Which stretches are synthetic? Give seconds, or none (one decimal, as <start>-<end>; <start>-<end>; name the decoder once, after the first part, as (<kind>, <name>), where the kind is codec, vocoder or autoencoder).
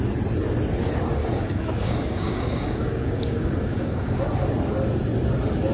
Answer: 1.2-4.2 (codec, DAC)